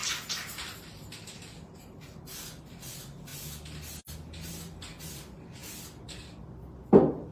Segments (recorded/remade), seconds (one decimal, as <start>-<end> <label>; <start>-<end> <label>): 0.0-7.3 recorded

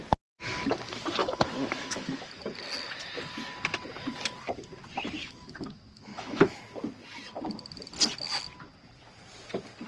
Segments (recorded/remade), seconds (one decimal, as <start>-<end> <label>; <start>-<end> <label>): 0.0-1.2 recorded; 1.2-2.3 remade; 2.3-5.2 recorded; 5.2-6.6 remade; 6.6-9.9 recorded

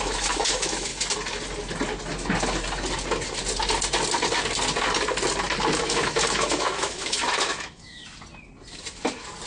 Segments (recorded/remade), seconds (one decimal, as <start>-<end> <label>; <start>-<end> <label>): 0.0-0.9 remade; 0.9-5.8 recorded; 5.8-8.0 remade; 8.0-9.5 recorded

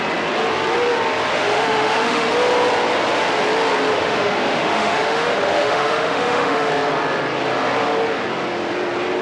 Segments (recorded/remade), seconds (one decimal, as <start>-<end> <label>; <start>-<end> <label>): 0.0-1.3 recorded; 1.3-2.3 remade; 2.3-3.9 recorded; 3.9-6.7 remade; 6.7-9.2 recorded

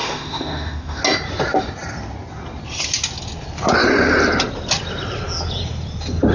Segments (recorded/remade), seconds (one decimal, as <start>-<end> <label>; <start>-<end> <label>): 0.0-1.0 remade; 1.0-6.3 recorded

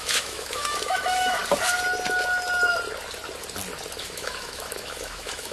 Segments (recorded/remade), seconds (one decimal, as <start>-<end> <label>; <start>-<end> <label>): 0.0-1.4 remade; 1.4-4.0 recorded; 4.0-5.5 remade

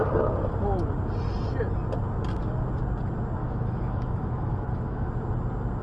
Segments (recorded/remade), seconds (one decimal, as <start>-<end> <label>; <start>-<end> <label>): 0.0-3.4 recorded; 3.4-5.1 remade; 5.1-5.8 recorded